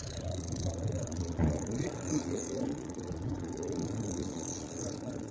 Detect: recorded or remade remade